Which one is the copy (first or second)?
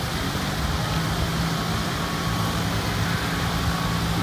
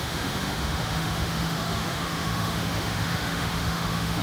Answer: second